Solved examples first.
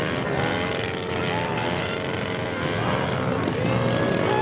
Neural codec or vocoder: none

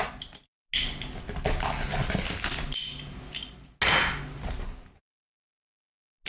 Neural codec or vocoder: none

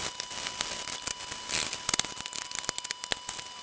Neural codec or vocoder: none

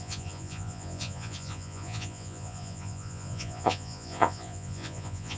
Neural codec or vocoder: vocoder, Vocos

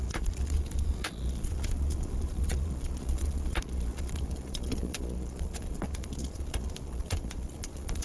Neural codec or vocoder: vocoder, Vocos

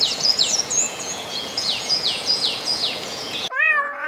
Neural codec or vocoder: vocoder, Vocos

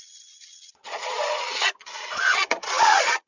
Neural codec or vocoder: vocoder, Vocos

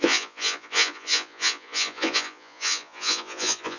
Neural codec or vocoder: vocoder, Vocos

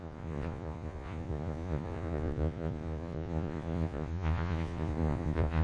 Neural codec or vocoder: vocoder, Vocos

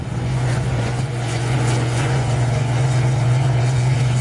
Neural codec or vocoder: vocoder, Vocos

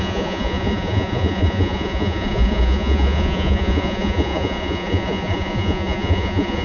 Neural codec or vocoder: vocoder, Vocos